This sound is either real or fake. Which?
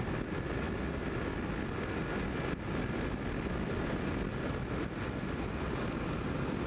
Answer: real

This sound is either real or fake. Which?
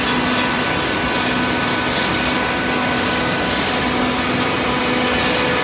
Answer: real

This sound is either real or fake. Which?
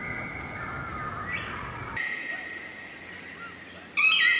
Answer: real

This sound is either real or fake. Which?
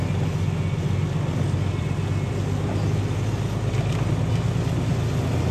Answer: real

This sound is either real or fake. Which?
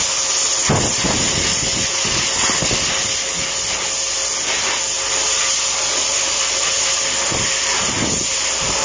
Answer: real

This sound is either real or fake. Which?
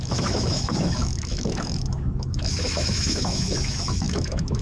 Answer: fake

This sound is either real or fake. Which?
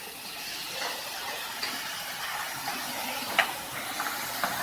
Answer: real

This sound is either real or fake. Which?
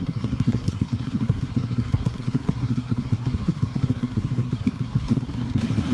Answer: fake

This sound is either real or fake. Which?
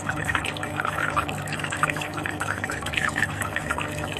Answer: fake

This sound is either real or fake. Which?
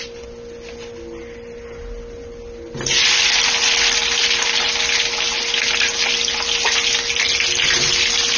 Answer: real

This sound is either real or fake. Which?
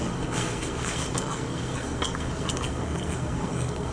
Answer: fake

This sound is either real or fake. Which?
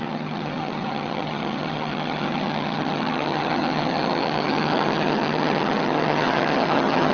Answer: fake